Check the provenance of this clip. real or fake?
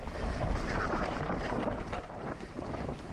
fake